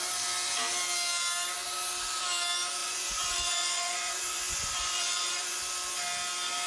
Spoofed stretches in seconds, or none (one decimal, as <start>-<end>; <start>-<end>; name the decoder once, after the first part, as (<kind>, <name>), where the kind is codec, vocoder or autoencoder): 2.8-5.6 (vocoder, Vocos)